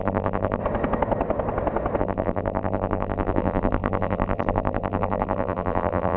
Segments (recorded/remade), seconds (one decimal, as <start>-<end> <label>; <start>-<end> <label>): 0.0-0.6 remade; 0.6-2.0 recorded; 2.0-6.2 remade